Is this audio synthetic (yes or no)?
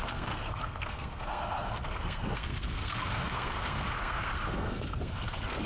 yes